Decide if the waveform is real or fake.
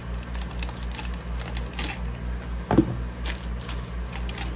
real